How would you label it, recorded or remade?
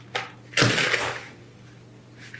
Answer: recorded